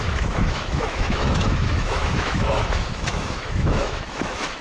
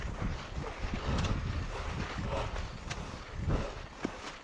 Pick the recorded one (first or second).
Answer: second